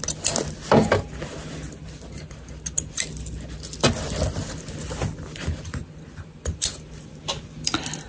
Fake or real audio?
real